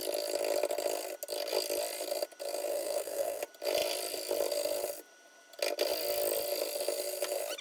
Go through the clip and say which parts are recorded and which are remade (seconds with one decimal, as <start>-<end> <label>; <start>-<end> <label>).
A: 0.0-2.7 recorded; 2.7-3.4 remade; 3.4-7.6 recorded